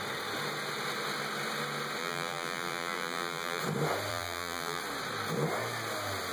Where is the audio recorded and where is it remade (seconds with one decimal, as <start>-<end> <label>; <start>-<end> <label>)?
0.0-2.0 recorded; 2.0-3.6 remade; 3.6-4.1 recorded; 4.1-4.8 remade; 4.8-6.3 recorded